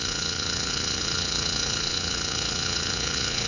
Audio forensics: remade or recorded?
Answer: remade